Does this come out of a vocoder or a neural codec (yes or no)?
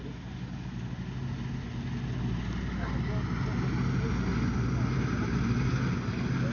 no